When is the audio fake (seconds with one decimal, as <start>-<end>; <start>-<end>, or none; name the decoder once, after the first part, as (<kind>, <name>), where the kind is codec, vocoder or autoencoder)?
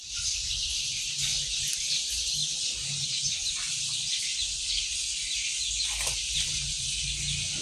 0.0-0.6 (vocoder, BigVGAN v2); 1.3-2.0